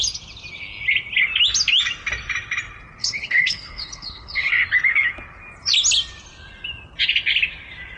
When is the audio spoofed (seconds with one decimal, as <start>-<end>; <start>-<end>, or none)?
3.0-4.5